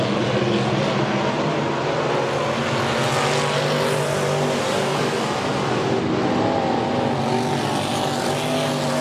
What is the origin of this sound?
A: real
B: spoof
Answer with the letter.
A